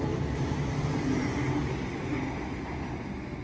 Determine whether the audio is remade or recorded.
recorded